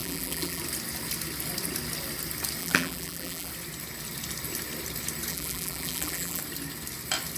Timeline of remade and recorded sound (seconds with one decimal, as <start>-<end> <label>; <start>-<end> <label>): 0.0-0.6 remade; 0.6-2.6 recorded; 2.6-3.5 remade; 3.5-5.3 recorded; 5.3-6.4 remade; 6.4-7.4 recorded